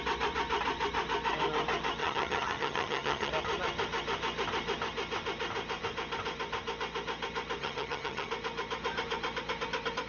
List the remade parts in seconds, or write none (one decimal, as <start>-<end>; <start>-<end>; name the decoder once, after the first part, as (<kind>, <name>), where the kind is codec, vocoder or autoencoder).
2.0-3.3 (vocoder, HiFi-GAN); 7.6-8.3